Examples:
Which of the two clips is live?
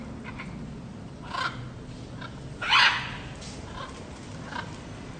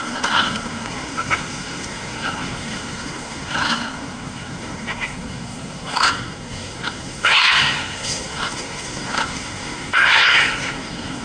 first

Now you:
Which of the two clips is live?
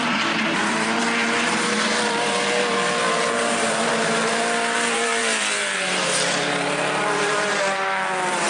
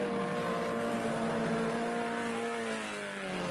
second